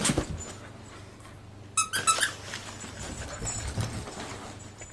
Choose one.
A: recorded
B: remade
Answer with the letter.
A